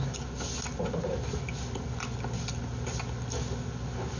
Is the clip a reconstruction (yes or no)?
no